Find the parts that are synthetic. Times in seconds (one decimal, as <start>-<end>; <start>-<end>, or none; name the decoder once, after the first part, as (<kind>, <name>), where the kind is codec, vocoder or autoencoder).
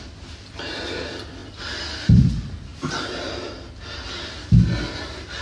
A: none